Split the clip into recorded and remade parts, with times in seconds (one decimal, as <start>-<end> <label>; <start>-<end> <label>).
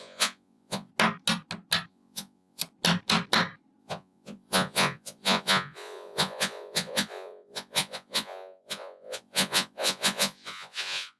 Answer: 0.0-0.9 remade; 0.9-1.9 recorded; 1.9-2.6 remade; 2.6-3.8 recorded; 3.8-11.2 remade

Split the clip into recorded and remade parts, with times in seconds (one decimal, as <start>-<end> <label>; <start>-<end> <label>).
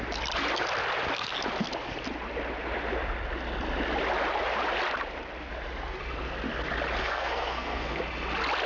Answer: 0.0-7.0 recorded; 7.0-8.0 remade; 8.0-8.7 recorded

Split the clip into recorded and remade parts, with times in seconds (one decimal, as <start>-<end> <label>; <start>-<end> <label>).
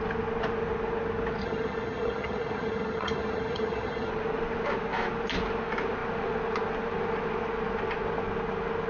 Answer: 0.0-1.4 recorded; 1.4-4.1 remade; 4.1-8.9 recorded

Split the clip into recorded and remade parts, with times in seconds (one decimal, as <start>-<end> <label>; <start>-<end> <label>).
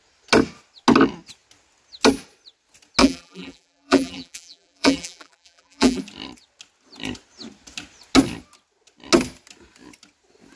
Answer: 0.0-3.0 recorded; 3.0-6.0 remade; 6.0-10.6 recorded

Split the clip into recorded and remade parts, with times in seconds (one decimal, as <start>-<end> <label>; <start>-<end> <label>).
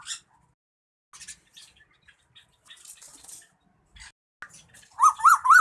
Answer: 0.0-5.6 recorded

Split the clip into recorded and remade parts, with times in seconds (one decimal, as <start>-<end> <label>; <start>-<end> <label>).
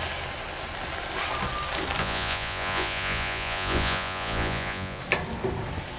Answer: 0.0-2.0 recorded; 2.0-5.0 remade; 5.0-6.0 recorded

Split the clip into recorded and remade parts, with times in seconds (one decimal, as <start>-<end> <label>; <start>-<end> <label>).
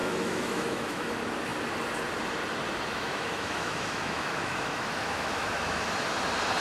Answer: 0.0-1.1 remade; 1.1-2.9 recorded; 2.9-5.8 remade; 5.8-6.6 recorded